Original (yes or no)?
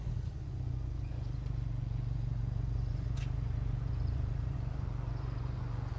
no